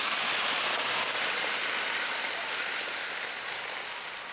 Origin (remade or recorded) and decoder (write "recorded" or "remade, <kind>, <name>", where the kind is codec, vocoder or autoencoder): recorded